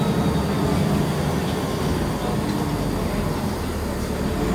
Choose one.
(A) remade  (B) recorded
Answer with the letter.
B